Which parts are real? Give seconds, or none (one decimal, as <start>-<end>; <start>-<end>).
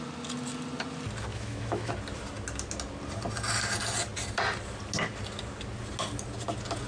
0.0-1.3; 1.9-6.9